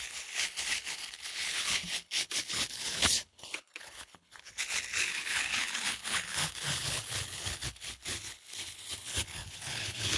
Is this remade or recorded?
remade